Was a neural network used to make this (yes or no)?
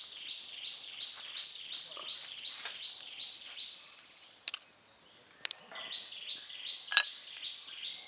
no